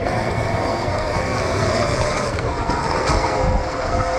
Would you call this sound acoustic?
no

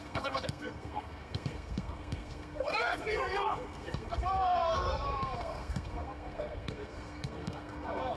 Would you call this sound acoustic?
no